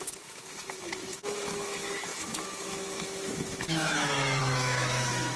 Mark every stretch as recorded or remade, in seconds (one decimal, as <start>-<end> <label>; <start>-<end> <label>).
0.0-5.4 remade